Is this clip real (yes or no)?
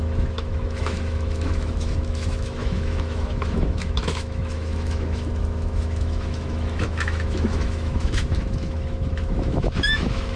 no